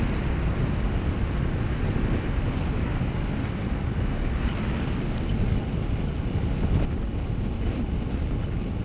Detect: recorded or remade recorded